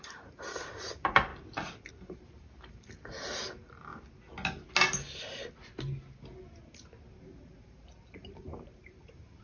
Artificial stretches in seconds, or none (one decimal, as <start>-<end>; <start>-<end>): 0.0-1.3; 1.9-3.9; 7.2-9.4

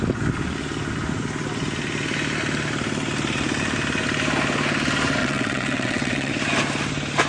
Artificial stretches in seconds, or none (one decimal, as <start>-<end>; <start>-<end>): 5.2-6.3

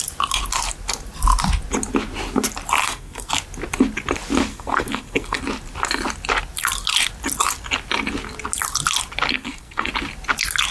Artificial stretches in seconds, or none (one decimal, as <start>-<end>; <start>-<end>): 2.8-3.3; 4.5-5.4; 9.3-9.9

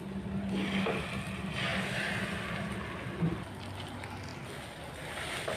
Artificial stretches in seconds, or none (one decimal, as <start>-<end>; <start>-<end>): none

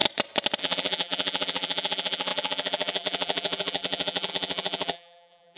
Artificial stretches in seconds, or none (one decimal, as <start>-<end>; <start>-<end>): 0.6-5.6

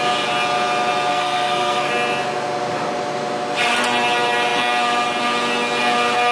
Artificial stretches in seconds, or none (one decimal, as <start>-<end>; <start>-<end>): 1.1-1.9

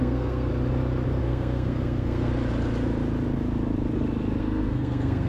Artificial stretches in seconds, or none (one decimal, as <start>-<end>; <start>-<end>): 0.0-0.5; 1.2-2.3; 4.4-5.3